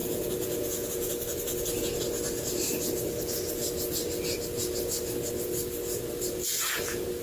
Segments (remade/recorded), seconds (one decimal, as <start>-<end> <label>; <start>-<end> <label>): 0.0-1.1 remade; 1.1-7.2 recorded